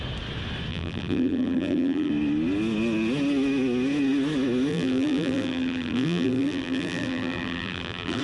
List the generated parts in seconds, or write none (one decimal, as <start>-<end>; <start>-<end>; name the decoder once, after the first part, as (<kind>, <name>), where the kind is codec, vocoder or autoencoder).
0.7-2.1 (vocoder, BigVGAN v2); 4.7-8.2